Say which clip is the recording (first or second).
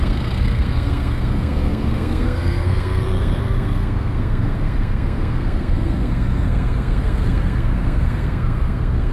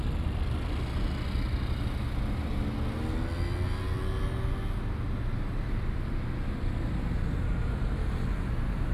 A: second